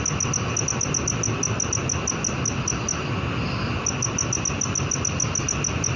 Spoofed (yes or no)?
no